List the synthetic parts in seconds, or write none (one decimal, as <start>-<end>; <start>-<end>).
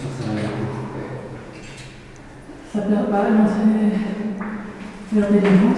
1.1-1.8